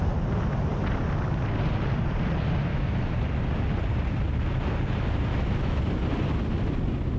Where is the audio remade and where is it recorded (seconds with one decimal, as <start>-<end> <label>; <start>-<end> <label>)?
0.0-2.7 recorded; 2.7-3.2 remade; 3.2-5.3 recorded; 5.3-5.8 remade; 5.8-7.2 recorded